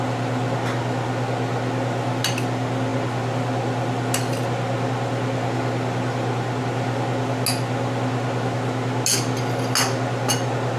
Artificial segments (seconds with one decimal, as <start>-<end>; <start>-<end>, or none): none